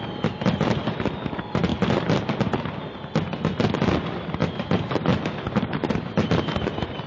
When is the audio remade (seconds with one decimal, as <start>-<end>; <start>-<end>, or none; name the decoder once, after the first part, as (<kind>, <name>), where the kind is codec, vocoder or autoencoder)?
none